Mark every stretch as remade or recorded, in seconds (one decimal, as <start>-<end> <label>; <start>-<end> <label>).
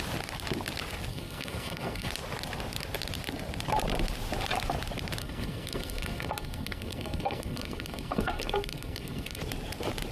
0.0-1.1 recorded; 1.1-2.1 remade; 2.1-5.2 recorded; 5.2-9.4 remade; 9.4-10.1 recorded